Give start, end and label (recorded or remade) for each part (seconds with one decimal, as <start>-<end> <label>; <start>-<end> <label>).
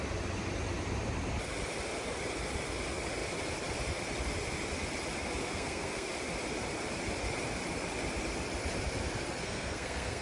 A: 0.0-5.4 recorded; 5.4-6.1 remade; 6.1-9.4 recorded; 9.4-10.2 remade